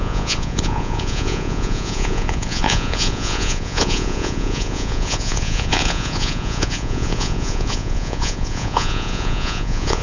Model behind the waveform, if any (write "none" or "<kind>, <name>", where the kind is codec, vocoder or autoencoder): vocoder, Vocos